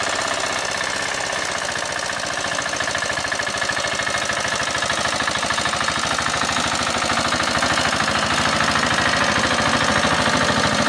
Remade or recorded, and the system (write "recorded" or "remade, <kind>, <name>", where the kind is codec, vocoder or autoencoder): recorded